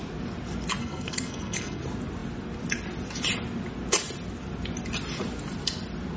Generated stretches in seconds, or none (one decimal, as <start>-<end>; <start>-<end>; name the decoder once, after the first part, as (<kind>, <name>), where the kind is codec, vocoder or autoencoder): 0.8-1.8 (codec, SNAC)

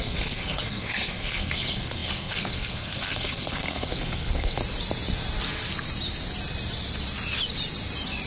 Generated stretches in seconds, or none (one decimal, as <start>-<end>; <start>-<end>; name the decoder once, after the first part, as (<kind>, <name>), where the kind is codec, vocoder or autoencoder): 0.0-4.6 (codec, SNAC)